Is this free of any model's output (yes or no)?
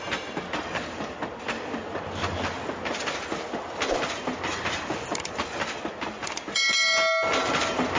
yes